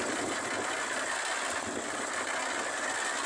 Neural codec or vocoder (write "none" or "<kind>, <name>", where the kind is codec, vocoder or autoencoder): none